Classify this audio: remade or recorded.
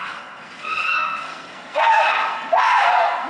remade